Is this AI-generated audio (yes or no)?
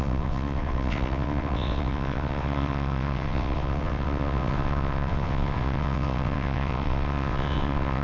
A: yes